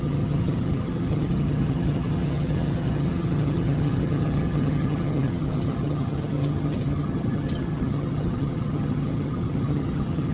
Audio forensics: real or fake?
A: fake